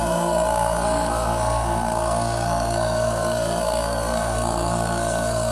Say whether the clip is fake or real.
fake